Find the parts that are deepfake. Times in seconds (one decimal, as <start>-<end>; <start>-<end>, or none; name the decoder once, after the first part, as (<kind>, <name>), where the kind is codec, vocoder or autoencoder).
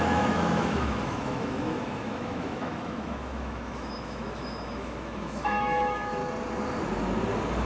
0.0-6.2 (autoencoder, DAC-VAE)